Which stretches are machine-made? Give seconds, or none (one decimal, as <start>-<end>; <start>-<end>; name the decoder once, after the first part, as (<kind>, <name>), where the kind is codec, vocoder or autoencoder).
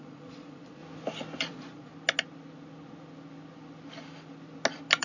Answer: 0.0-0.8 (vocoder, Vocos); 1.4-1.9